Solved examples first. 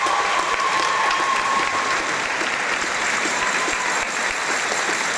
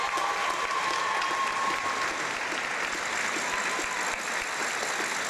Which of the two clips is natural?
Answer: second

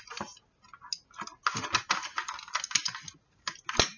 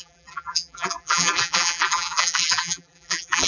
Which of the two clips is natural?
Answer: first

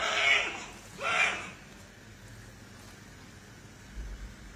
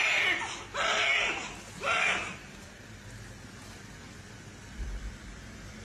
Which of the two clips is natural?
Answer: first